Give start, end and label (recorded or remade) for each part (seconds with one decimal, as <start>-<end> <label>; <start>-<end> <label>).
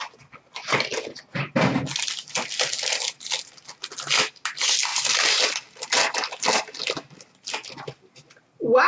0.0-8.9 recorded